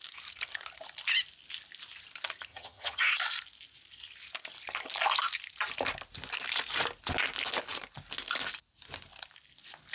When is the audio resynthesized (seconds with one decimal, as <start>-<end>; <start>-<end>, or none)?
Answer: 2.5-3.1